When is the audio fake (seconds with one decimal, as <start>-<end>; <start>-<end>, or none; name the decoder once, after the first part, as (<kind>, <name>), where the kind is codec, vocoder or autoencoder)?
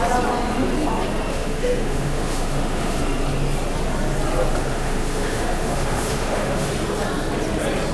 1.3-3.0 (autoencoder, DAC-VAE); 4.7-6.7